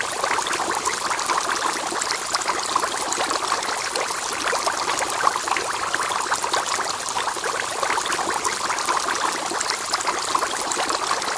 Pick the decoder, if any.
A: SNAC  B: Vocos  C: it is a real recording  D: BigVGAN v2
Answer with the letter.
C